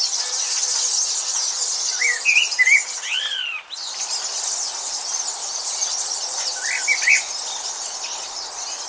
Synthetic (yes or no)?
no